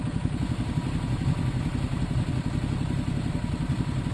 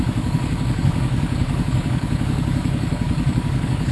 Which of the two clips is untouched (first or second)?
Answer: first